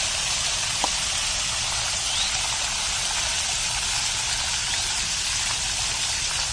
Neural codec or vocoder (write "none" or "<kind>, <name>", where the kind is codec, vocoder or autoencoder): none